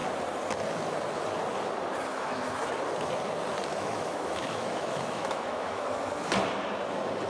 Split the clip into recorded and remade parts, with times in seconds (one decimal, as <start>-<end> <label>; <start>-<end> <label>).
0.0-2.1 recorded; 2.1-2.7 remade; 2.7-3.7 recorded; 3.7-6.0 remade; 6.0-7.3 recorded